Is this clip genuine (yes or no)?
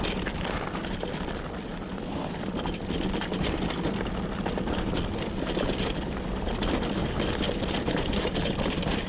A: yes